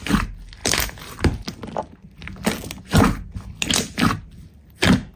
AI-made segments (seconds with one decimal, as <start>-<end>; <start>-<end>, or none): none